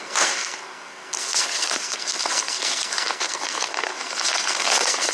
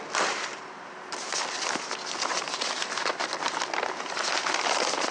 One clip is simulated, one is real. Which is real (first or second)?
second